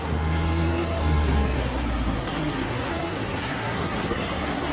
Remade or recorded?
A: remade